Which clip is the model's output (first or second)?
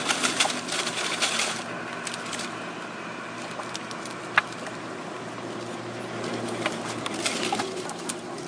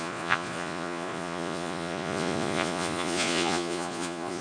second